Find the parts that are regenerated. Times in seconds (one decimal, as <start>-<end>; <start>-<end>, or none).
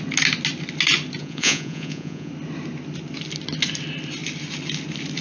1.2-2.3